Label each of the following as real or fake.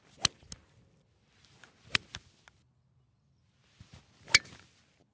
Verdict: real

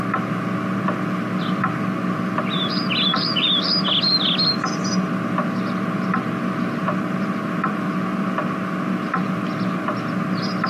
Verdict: real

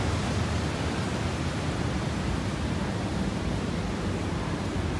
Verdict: real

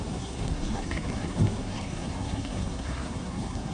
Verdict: fake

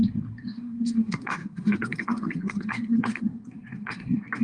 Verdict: fake